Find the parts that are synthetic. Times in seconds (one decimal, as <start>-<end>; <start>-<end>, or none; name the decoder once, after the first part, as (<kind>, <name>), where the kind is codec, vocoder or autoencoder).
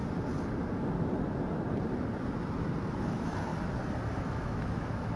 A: 3.1-3.5 (autoencoder, DAC-VAE); 4.2-5.2